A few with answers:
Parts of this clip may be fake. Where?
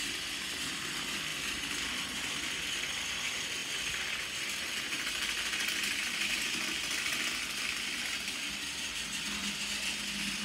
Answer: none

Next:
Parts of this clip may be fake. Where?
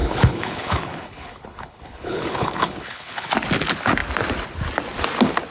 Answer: 0.0-3.3 (codec, HILCodec)